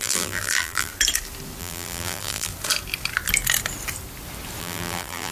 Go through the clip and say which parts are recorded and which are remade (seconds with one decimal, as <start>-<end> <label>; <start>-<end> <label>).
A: 0.0-0.9 remade; 0.9-1.6 recorded; 1.6-2.5 remade; 2.5-4.6 recorded; 4.6-5.3 remade